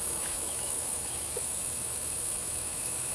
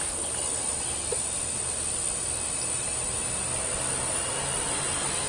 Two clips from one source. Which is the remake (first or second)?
first